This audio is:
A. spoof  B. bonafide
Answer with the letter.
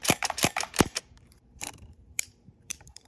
A